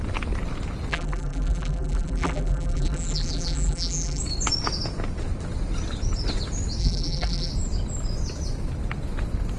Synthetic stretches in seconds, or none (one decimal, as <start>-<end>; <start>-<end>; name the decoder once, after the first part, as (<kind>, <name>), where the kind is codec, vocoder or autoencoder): 0.9-4.2 (vocoder, BigVGAN v2); 6.8-7.5